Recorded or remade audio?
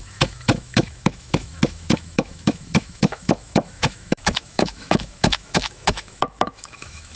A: remade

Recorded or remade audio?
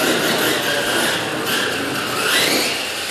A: recorded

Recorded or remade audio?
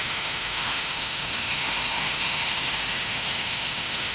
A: remade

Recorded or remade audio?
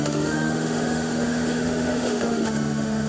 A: remade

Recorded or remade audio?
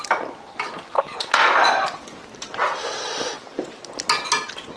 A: recorded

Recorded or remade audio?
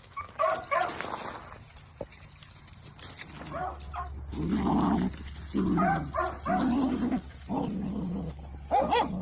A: recorded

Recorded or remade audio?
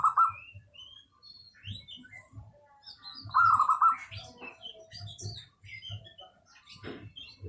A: recorded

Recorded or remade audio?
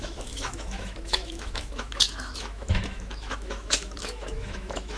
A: remade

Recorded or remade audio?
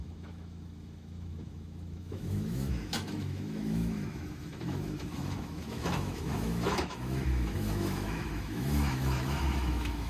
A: remade